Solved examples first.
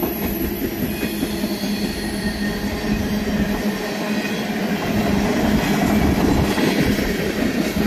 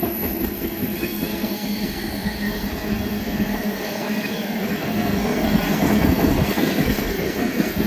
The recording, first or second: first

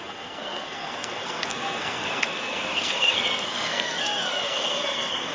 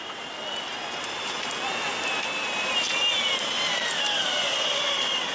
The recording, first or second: second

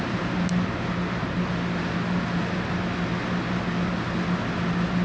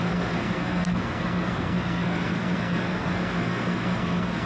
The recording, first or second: first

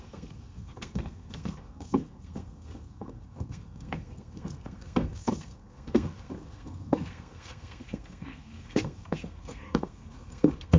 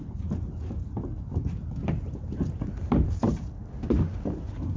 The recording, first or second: second